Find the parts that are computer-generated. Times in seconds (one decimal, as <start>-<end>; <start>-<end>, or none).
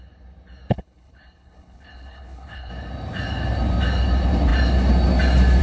0.7-2.7